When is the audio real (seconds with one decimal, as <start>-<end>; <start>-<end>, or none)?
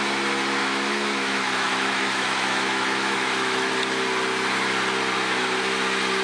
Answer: 0.0-0.6; 3.7-6.2